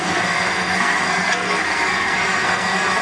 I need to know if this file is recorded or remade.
remade